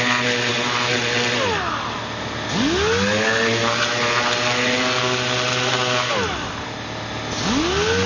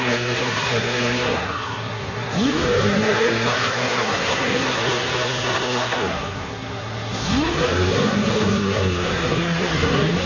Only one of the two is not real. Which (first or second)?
second